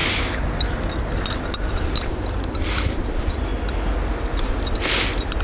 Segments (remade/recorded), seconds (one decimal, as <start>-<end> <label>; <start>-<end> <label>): 0.0-1.7 recorded; 1.7-3.5 remade; 3.5-4.4 recorded; 4.4-5.4 remade